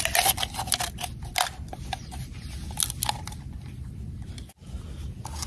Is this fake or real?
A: real